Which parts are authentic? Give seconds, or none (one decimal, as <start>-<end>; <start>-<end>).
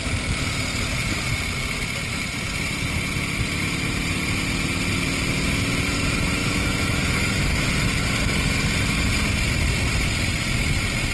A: 0.0-6.4; 7.7-11.1